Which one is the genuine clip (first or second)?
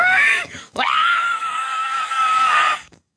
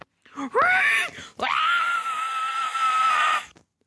second